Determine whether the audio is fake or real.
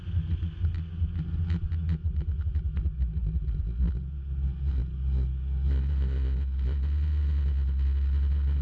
real